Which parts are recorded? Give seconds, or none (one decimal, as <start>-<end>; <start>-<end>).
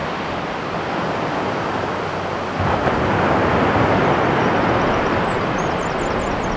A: 0.0-6.6